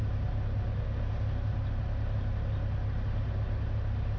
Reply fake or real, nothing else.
real